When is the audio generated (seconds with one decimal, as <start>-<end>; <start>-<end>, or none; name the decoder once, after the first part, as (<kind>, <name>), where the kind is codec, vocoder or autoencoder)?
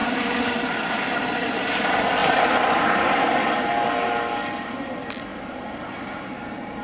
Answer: 0.0-1.8 (vocoder, BigVGAN v2); 5.3-6.8